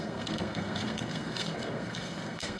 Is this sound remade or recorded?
remade